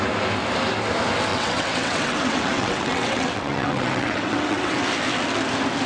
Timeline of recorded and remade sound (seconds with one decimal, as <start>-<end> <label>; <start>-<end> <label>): 0.0-1.3 recorded; 1.3-4.8 remade; 4.8-5.9 recorded